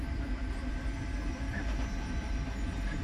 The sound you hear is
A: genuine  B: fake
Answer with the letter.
A